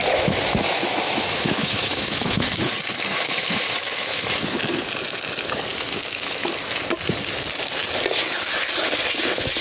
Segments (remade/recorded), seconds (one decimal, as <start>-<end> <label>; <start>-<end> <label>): 0.0-2.7 remade; 2.7-3.1 recorded; 3.1-4.6 remade; 4.6-5.7 recorded; 5.7-6.5 remade; 6.5-9.6 recorded